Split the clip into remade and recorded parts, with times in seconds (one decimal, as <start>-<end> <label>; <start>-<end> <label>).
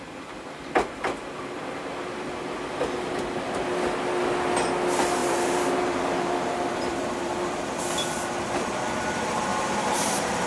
0.0-5.2 recorded; 5.2-7.8 remade; 7.8-10.5 recorded